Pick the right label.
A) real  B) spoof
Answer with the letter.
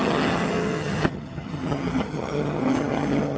B